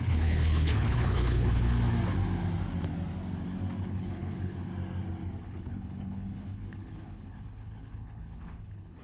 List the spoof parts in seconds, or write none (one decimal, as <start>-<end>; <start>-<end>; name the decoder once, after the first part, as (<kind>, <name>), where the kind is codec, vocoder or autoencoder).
0.0-1.7 (codec, HILCodec); 3.8-4.7; 5.4-9.0